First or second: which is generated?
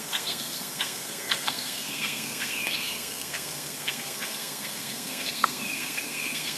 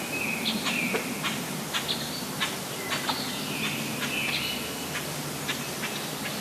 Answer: first